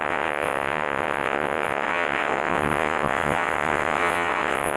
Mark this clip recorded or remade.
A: remade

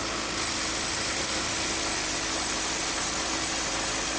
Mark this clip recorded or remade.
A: recorded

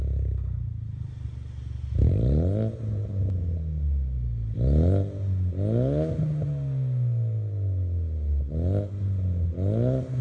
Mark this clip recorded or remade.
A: recorded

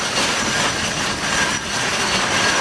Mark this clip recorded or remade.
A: recorded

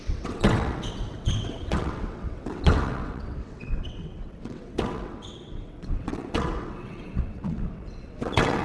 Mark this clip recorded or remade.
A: remade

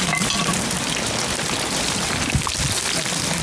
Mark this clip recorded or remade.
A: recorded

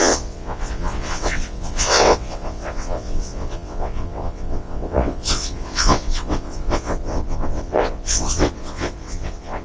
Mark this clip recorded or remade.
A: remade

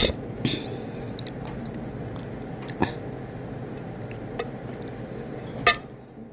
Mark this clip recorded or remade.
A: recorded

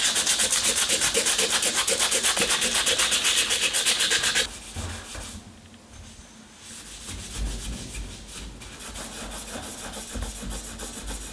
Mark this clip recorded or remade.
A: recorded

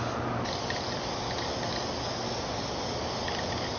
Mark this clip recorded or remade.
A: recorded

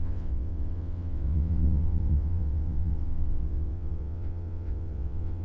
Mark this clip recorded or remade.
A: remade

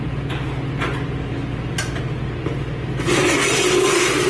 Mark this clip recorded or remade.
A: recorded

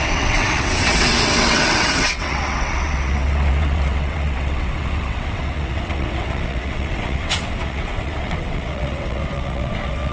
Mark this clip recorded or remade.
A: remade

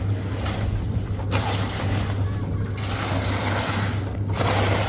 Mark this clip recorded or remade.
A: recorded